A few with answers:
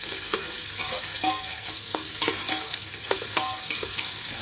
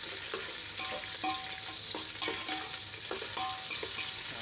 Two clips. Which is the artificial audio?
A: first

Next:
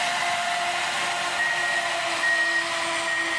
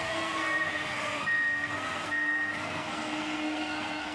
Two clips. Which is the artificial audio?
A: second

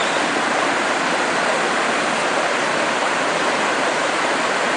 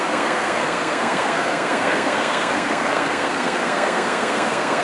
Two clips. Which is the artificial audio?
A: second